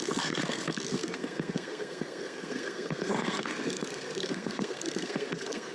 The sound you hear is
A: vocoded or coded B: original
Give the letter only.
A